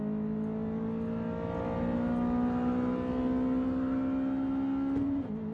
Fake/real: real